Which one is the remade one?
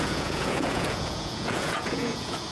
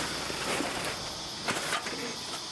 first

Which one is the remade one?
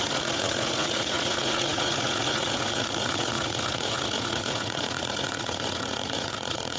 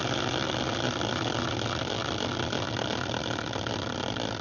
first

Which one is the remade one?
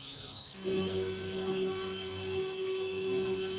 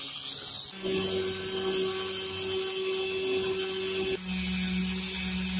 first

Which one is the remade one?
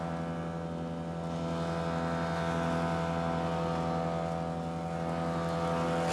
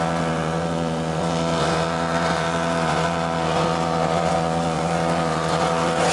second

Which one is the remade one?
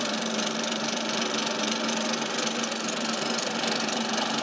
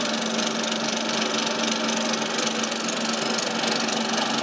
first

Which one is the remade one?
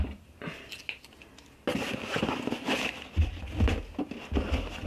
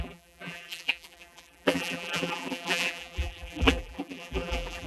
second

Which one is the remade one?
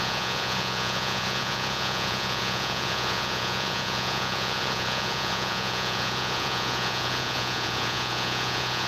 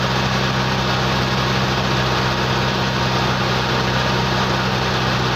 first